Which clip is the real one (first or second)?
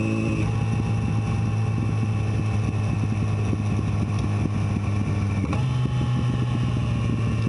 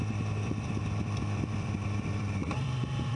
first